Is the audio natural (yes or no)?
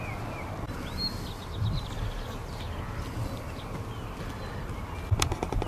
yes